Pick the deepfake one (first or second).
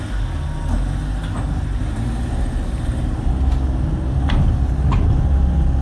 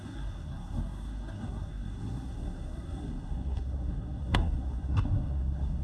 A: second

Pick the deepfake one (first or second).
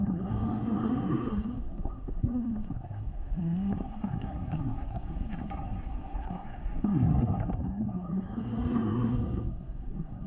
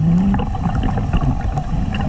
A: first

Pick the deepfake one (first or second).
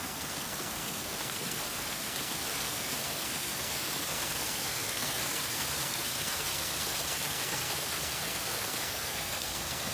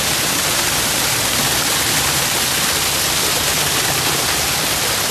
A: first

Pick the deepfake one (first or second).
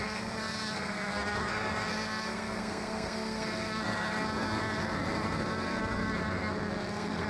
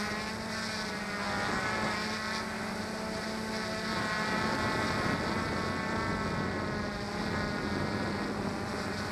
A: first